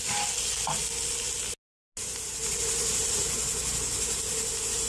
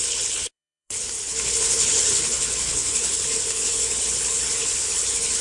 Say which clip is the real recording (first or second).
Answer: first